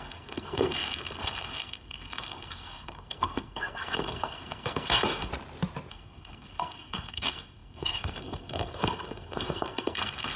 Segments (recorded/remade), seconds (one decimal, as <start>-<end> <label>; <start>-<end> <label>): 0.0-5.3 remade; 5.3-5.9 recorded; 5.9-10.4 remade